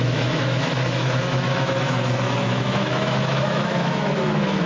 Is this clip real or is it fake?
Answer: fake